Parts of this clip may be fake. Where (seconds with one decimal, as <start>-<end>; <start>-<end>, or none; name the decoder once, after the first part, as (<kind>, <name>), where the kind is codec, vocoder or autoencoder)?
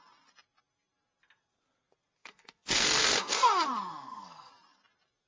2.2-4.5 (codec, SNAC)